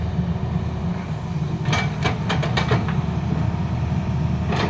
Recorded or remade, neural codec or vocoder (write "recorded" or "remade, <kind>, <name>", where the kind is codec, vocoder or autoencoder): recorded